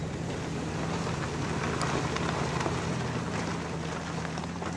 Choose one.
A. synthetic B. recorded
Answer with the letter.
B